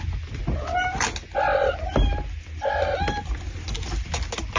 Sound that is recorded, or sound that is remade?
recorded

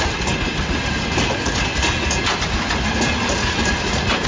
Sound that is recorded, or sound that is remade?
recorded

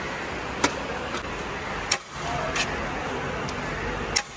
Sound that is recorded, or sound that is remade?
recorded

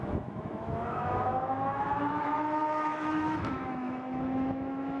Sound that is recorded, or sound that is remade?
remade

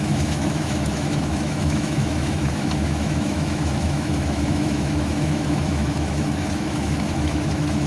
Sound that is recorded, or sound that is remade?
remade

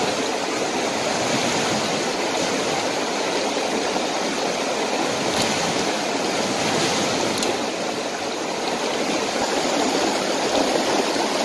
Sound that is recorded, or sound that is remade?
recorded